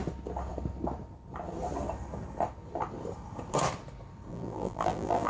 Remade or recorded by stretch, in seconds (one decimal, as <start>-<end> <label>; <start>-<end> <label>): 0.0-4.3 recorded; 4.3-5.3 remade